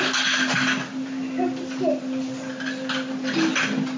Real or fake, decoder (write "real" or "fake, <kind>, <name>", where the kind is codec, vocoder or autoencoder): real